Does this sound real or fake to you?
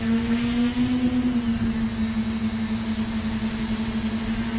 real